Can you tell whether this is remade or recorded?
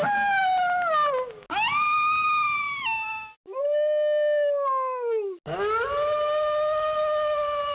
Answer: recorded